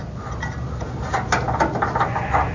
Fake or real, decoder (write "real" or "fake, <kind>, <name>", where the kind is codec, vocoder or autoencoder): real